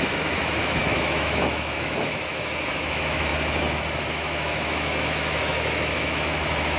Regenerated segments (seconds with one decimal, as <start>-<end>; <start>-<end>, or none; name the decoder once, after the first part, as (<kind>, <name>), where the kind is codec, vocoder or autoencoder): 0.0-3.3 (autoencoder, DAC-VAE); 4.0-6.8